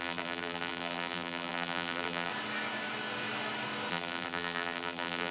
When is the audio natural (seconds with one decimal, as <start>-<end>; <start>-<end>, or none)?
2.3-3.9